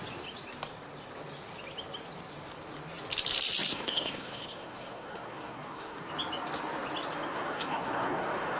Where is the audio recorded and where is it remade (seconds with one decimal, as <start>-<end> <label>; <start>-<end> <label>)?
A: 0.0-3.7 recorded; 3.7-6.1 remade; 6.1-7.3 recorded; 7.3-8.6 remade